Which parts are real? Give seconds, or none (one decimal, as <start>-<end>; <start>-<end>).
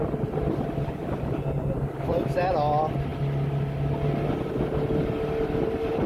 0.0-6.1